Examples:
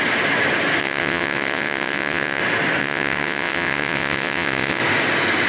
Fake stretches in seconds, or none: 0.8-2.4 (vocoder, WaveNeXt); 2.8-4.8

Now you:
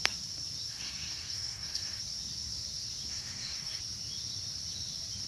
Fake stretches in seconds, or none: 0.7-2.0 (codec, SNAC); 3.1-3.8

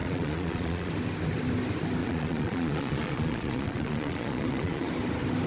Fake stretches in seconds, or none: 0.0-0.9 (vocoder, Vocos); 2.0-4.9

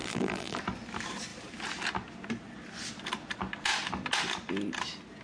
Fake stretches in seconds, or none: 0.0-0.6 (vocoder, BigVGAN v2)